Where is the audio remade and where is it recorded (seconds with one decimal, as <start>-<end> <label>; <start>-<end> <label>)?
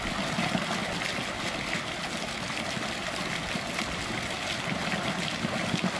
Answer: 0.0-6.0 recorded